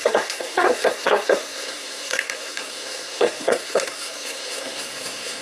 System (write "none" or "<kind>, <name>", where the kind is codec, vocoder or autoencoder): codec, SNAC